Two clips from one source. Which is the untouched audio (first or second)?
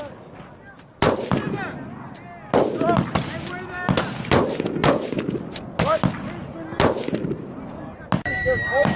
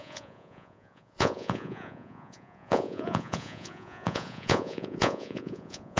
first